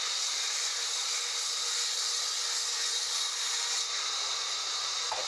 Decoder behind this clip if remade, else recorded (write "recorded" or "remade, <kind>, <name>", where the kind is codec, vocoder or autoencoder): recorded